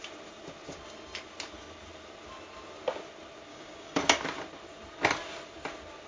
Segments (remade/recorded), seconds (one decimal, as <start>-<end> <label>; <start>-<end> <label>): 0.0-3.5 recorded; 3.5-4.0 remade; 4.0-6.1 recorded